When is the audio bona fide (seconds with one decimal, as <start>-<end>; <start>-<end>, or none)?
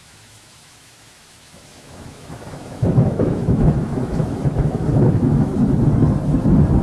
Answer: 5.5-6.8